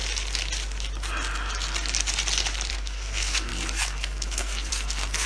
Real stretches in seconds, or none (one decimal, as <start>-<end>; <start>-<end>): 0.0-2.7